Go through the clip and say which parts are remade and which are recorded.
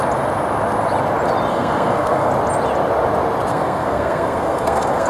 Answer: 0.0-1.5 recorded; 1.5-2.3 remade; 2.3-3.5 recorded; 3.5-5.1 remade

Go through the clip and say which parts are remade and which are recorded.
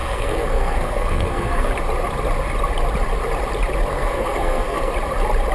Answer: 0.0-1.7 remade; 1.7-3.9 recorded; 3.9-4.9 remade; 4.9-5.5 recorded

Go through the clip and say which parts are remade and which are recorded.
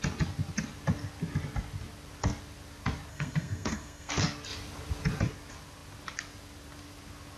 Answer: 0.0-3.1 recorded; 3.1-4.1 remade; 4.1-7.4 recorded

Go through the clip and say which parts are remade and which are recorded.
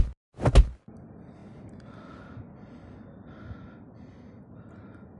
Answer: 0.0-5.2 recorded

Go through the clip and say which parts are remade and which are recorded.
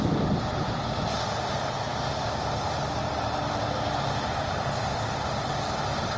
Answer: 0.0-6.2 recorded